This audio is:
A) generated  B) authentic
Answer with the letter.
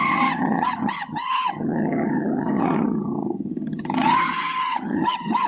A